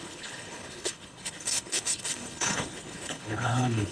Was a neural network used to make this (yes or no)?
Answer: yes